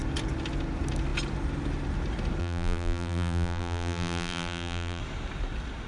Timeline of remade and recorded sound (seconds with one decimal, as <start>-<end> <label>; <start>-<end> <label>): 0.0-2.4 recorded; 2.4-5.0 remade; 5.0-5.9 recorded